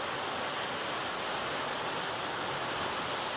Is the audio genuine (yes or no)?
yes